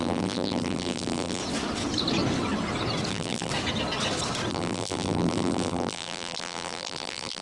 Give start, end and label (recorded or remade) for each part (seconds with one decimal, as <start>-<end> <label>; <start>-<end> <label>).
0.0-1.4 remade; 1.4-3.1 recorded; 3.1-3.5 remade; 3.5-4.5 recorded; 4.5-7.4 remade